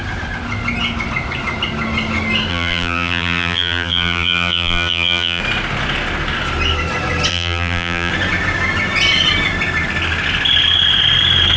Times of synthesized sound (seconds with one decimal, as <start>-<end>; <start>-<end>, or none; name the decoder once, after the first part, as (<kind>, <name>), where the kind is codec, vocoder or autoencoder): 2.5-5.4 (vocoder, BigVGAN v2); 7.3-8.1